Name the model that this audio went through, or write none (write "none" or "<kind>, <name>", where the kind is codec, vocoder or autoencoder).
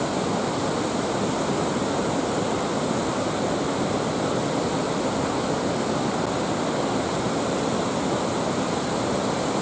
none